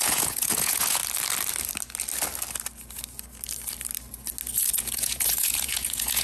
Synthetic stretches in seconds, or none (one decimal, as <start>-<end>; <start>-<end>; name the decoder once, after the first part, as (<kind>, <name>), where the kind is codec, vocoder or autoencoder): 0.0-1.0 (vocoder, Vocos); 4.7-6.2